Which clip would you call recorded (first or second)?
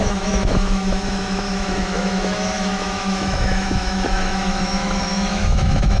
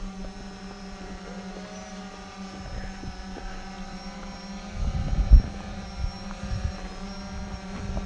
second